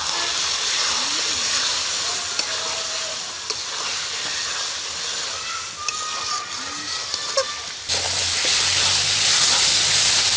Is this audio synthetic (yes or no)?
no